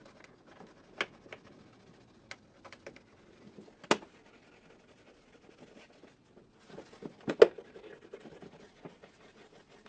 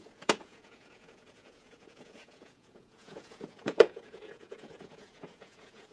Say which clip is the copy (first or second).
second